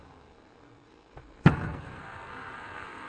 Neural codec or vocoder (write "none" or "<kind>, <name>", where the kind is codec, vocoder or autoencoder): codec, SNAC